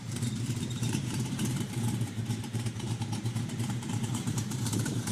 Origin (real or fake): fake